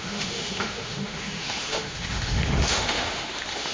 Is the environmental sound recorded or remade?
remade